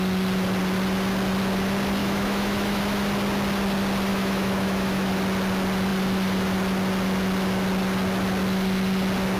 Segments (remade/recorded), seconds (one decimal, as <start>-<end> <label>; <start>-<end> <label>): 0.0-2.0 recorded; 2.0-2.8 remade; 2.8-4.1 recorded; 4.1-5.1 remade; 5.1-9.4 recorded